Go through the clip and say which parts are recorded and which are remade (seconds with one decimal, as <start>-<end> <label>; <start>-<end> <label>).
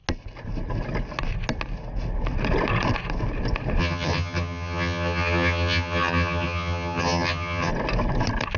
0.0-3.8 recorded; 3.8-7.7 remade; 7.7-8.6 recorded